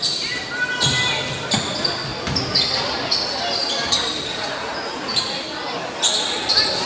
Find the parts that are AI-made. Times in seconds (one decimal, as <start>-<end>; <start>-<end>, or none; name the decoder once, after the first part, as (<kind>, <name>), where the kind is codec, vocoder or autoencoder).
4.3-5.4 (vocoder, Vocos)